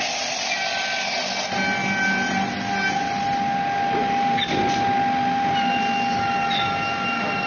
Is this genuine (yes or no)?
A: yes